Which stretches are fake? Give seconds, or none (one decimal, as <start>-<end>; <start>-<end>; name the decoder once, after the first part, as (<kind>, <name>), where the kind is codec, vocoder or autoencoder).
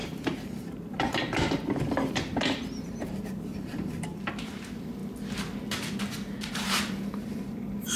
0.0-5.0 (vocoder, BigVGAN v2); 6.5-8.0